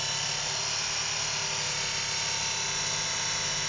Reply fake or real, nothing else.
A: real